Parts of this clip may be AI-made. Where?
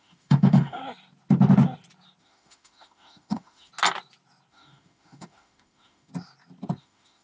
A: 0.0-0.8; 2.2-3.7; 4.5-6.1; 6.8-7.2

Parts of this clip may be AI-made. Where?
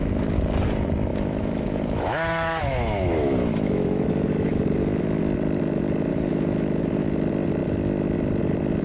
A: 1.1-5.2; 6.1-7.1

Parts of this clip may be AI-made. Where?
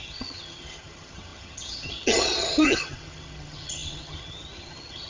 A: 0.0-5.1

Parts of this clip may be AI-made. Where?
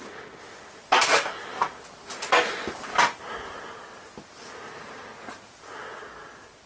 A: none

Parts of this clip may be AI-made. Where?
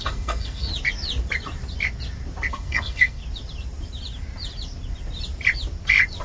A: 0.0-0.7; 2.5-3.2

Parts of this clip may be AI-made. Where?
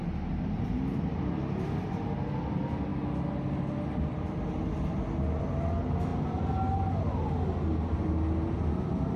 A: none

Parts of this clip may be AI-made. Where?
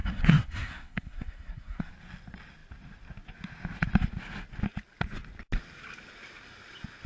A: 0.0-1.9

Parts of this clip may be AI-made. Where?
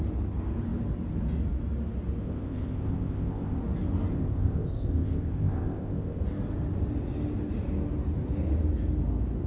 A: 2.2-3.6; 4.1-6.2